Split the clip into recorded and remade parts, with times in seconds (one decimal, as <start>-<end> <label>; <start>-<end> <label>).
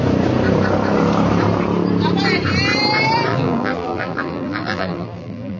0.0-3.3 recorded; 3.3-5.6 remade